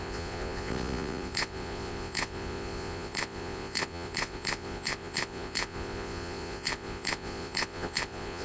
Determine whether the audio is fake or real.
fake